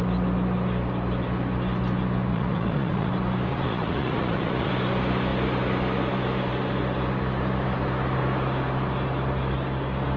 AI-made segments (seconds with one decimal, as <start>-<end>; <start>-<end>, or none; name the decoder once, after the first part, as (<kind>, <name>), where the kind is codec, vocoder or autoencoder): 2.3-3.1 (vocoder, Vocos); 3.5-4.7